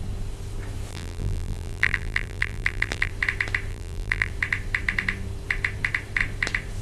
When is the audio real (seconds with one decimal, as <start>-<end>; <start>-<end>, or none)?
0.0-0.9; 3.1-3.7; 4.3-6.8

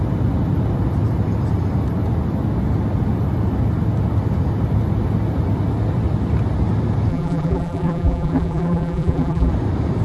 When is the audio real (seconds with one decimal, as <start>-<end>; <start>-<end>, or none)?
0.0-7.1; 9.5-10.0

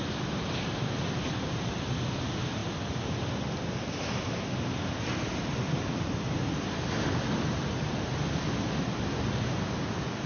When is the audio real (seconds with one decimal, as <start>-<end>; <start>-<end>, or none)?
0.0-10.3

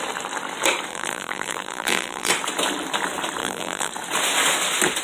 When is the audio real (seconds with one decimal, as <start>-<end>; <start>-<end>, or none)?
0.0-0.9; 2.3-3.4; 3.9-5.0

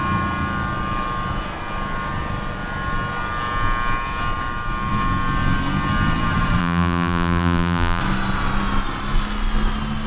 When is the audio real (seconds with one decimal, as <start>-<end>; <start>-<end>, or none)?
0.0-6.6; 8.0-10.1

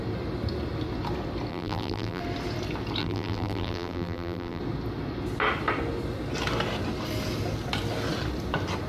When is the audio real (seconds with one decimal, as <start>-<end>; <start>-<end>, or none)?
0.0-1.5; 2.2-3.0; 4.6-8.9

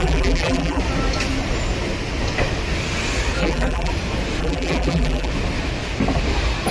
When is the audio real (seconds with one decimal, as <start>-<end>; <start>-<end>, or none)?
0.8-3.4; 3.9-4.4; 5.3-6.7

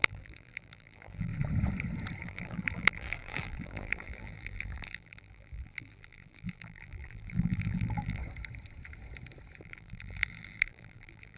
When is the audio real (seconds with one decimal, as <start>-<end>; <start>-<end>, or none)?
1.3-2.2; 8.2-9.6